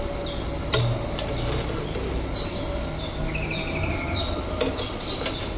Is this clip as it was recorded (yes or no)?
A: yes